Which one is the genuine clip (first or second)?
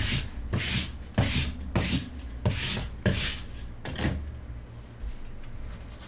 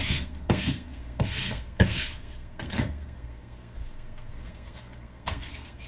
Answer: first